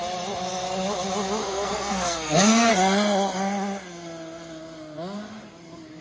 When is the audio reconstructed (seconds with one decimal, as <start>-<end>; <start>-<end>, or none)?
1.4-2.7